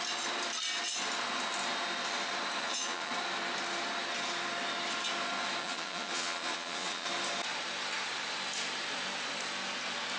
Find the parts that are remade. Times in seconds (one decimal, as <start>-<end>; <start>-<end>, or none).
2.6-3.1; 5.6-7.1